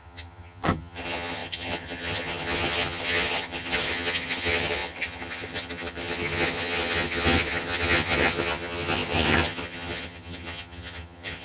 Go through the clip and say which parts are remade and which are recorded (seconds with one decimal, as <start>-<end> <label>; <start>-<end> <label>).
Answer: 0.0-11.4 remade